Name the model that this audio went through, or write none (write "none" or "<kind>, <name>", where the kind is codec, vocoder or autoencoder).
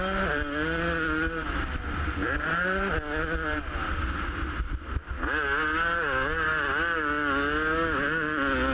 none